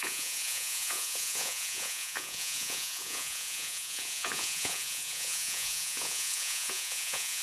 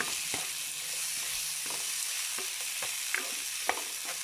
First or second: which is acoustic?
second